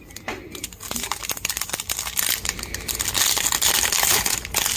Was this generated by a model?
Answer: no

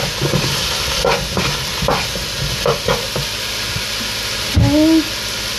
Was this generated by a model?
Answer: no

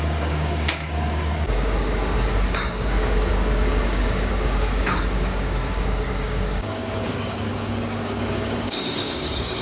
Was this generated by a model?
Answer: yes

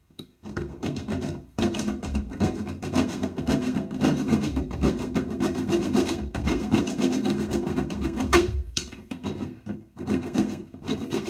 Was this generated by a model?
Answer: yes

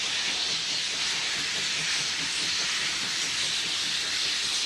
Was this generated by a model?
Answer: no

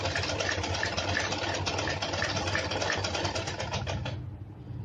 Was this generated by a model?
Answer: no